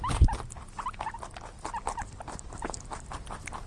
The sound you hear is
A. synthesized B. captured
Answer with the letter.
B